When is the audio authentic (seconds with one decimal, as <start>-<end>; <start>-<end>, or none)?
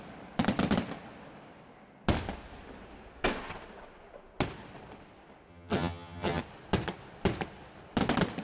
0.0-5.5; 6.4-8.4